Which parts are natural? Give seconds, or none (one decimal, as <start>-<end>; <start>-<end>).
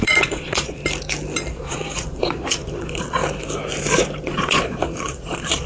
0.8-1.5; 3.2-4.2